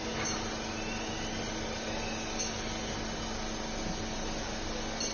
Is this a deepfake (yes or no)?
no